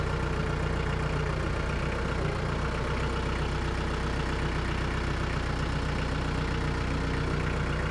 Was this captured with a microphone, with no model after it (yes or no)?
yes